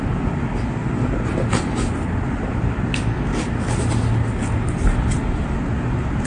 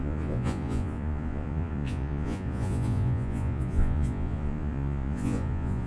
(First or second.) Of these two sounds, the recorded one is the first